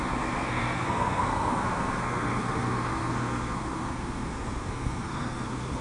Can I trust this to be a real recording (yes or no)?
no